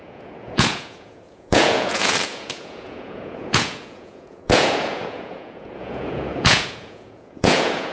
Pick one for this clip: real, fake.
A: fake